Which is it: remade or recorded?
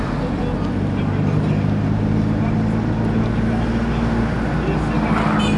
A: recorded